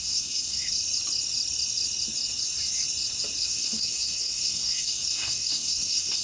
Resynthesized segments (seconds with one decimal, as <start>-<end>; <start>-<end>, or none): 0.0-0.7; 3.4-6.2